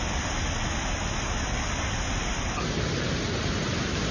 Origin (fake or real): real